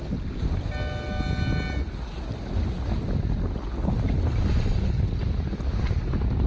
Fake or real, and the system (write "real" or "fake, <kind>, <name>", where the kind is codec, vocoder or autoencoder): real